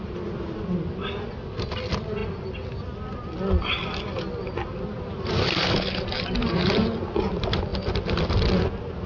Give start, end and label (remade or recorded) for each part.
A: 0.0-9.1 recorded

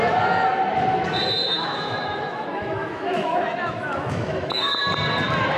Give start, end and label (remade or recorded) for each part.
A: 0.0-1.4 recorded; 1.4-4.8 remade; 4.8-5.6 recorded